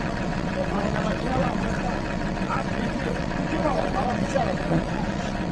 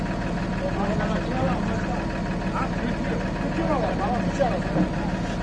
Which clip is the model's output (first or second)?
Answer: first